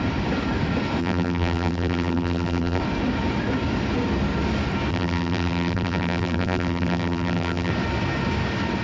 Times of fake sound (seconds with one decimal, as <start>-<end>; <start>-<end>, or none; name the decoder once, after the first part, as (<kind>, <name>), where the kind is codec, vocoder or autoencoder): 1.0-2.8 (vocoder, BigVGAN v2); 4.9-7.7